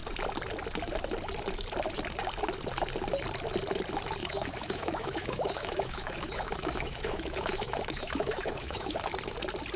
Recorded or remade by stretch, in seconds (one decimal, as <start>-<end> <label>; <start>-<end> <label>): 0.0-4.2 recorded; 4.2-9.0 remade; 9.0-9.8 recorded